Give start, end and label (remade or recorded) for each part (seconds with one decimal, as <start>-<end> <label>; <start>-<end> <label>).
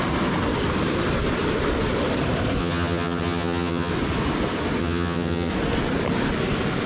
0.0-2.6 recorded; 2.6-3.9 remade; 3.9-4.8 recorded; 4.8-5.5 remade; 5.5-6.9 recorded